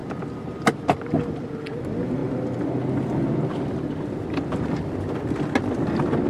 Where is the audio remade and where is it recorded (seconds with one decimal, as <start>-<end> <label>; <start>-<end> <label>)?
0.0-6.3 recorded